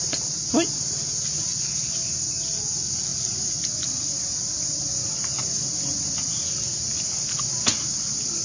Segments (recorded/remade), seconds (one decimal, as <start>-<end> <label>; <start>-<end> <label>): 0.0-8.4 recorded